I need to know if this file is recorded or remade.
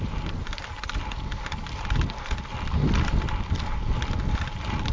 recorded